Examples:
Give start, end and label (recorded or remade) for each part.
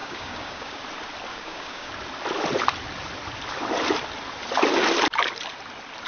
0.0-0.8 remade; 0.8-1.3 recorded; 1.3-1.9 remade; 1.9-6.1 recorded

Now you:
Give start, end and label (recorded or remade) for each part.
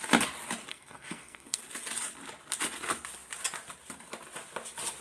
0.0-0.7 recorded; 0.7-1.6 remade; 1.6-5.0 recorded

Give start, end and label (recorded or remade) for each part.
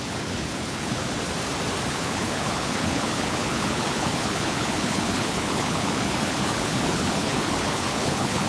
0.0-1.0 remade; 1.0-1.9 recorded; 1.9-8.5 remade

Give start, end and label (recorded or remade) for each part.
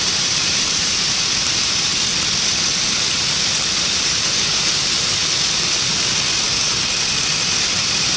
0.0-1.9 remade; 1.9-3.8 recorded; 3.8-5.2 remade; 5.2-7.6 recorded; 7.6-8.2 remade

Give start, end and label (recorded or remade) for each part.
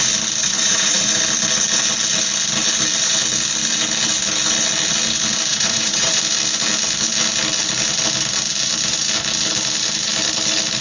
0.0-0.4 recorded; 0.4-1.2 remade; 1.2-5.5 recorded; 5.5-6.2 remade; 6.2-10.8 recorded